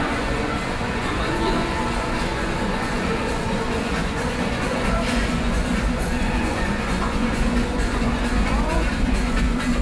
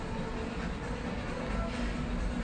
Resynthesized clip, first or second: first